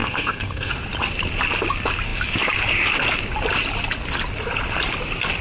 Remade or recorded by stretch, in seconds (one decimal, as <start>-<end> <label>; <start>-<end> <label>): 0.0-0.7 remade; 0.7-5.4 recorded